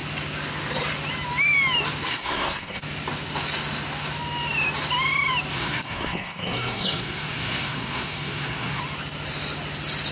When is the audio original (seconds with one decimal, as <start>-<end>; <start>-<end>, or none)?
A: 0.0-2.1; 2.8-5.5; 8.8-10.1